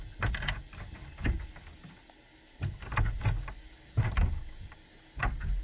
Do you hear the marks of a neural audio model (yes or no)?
no